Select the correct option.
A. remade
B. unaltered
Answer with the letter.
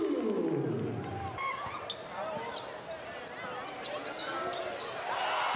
B